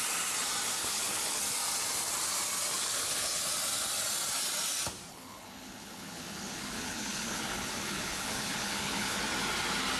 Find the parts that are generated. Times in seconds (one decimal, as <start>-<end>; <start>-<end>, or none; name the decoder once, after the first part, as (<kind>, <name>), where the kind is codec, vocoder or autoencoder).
0.8-1.4 (codec, HILCodec); 2.7-3.4; 5.1-9.2